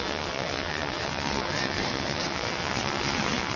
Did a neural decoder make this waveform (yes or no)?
yes